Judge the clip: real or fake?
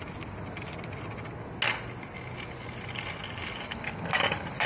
real